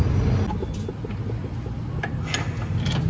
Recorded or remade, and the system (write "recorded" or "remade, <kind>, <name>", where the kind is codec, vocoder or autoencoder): recorded